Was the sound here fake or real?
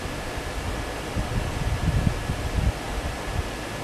real